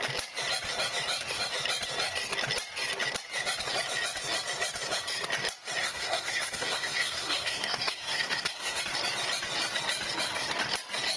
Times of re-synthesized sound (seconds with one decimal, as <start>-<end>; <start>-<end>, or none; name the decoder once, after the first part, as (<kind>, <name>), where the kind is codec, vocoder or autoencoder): 5.8-8.8 (codec, SNAC)